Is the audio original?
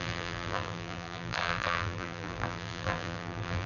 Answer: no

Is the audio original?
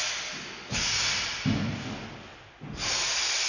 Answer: yes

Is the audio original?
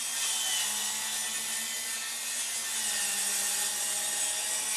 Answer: yes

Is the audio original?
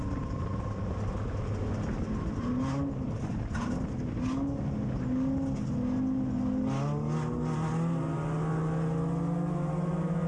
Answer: yes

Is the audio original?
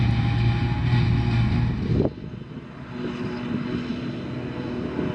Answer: yes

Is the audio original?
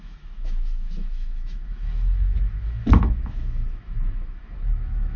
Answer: no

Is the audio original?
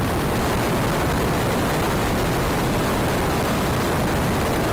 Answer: yes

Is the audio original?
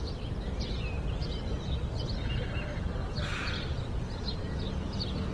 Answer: yes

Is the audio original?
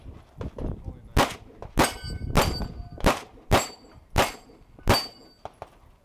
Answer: yes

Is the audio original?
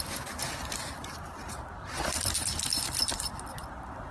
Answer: yes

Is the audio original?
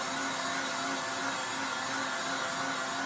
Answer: yes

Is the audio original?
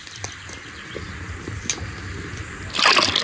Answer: yes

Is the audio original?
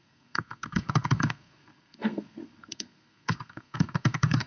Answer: no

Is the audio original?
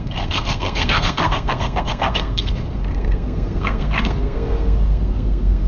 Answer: no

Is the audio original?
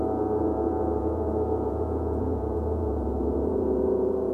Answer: no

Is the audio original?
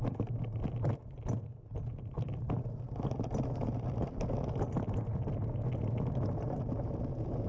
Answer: yes